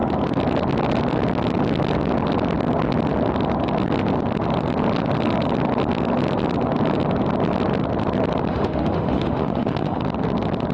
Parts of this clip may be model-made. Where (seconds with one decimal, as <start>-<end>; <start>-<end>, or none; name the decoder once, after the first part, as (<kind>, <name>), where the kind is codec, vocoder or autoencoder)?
8.5-10.0 (autoencoder, DAC-VAE)